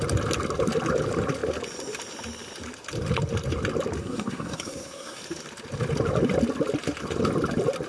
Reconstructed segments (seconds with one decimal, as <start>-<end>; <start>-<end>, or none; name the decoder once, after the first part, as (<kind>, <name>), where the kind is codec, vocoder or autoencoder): 4.0-5.2 (codec, SNAC)